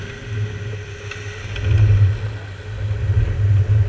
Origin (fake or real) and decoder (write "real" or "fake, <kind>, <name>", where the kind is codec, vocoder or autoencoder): real